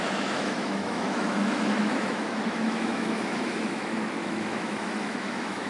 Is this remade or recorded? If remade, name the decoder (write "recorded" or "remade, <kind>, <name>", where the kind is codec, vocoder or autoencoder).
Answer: remade, autoencoder, DAC-VAE